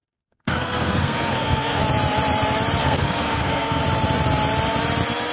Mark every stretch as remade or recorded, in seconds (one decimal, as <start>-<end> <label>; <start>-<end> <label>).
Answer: 0.0-1.8 remade; 1.8-2.8 recorded; 2.8-3.8 remade; 3.8-5.3 recorded